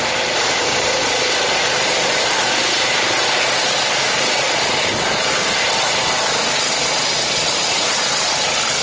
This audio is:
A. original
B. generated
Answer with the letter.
B